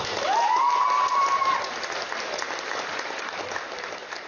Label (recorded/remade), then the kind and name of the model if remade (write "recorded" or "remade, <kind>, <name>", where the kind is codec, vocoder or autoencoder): remade, vocoder, BigVGAN v2